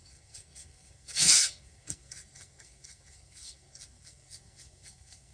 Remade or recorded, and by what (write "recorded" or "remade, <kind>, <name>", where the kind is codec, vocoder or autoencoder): remade, codec, SNAC